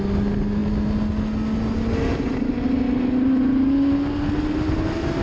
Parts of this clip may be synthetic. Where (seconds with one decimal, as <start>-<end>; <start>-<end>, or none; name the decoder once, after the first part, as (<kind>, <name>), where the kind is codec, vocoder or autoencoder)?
none